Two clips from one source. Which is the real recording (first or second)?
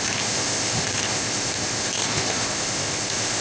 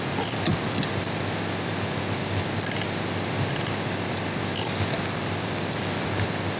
second